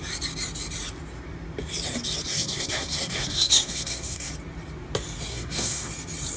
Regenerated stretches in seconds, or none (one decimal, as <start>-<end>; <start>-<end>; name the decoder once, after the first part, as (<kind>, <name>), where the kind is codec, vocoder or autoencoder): 2.3-4.3 (codec, SNAC); 5.3-5.9